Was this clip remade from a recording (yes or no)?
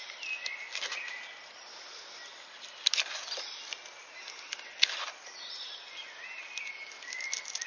no